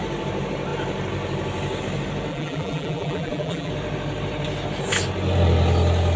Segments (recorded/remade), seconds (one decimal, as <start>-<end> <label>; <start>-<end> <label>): 0.0-2.3 recorded; 2.3-3.7 remade; 3.7-6.2 recorded